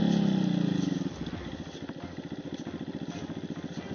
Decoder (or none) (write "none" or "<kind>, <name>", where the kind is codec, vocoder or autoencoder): none